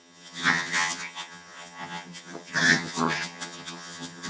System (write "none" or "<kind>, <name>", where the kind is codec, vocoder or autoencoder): vocoder, HiFi-GAN